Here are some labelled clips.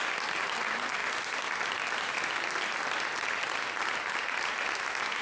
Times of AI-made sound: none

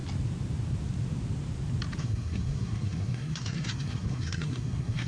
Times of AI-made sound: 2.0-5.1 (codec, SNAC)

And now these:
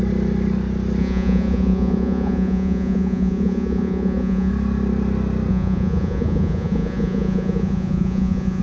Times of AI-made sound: 1.0-4.5 (vocoder, Vocos); 5.5-8.6